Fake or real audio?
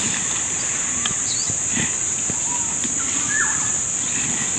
real